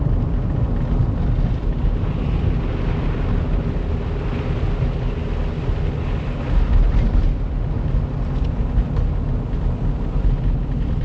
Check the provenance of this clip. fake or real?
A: real